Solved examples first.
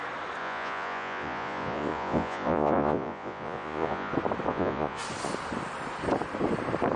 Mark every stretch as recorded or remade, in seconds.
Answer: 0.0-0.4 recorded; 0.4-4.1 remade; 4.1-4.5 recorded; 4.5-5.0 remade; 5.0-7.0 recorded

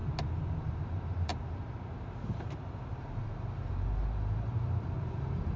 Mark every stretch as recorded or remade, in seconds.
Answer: 0.0-0.6 recorded; 0.6-1.3 remade; 1.3-3.0 recorded; 3.0-5.6 remade

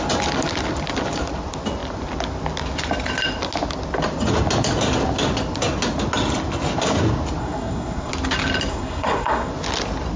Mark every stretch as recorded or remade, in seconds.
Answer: 0.0-7.4 recorded; 7.4-8.1 remade; 8.1-8.7 recorded; 8.7-9.5 remade; 9.5-10.2 recorded

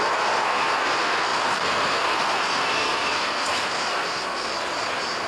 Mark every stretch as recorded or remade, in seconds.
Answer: 0.0-4.5 remade; 4.5-5.3 recorded

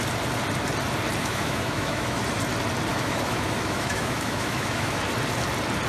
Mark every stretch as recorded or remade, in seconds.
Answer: 0.0-1.2 recorded; 1.2-2.2 remade; 2.2-2.9 recorded; 2.9-5.1 remade; 5.1-5.9 recorded